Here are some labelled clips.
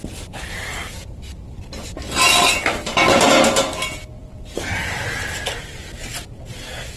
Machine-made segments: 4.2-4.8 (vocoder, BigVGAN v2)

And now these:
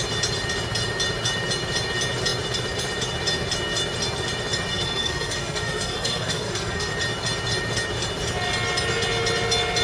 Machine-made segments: 4.7-6.9 (codec, SNAC)

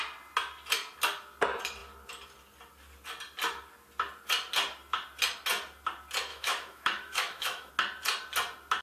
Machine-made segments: 6.3-7.7 (autoencoder, DAC-VAE)

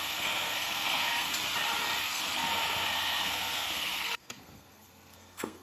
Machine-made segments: 0.0-1.3 (codec, SNAC); 2.0-5.6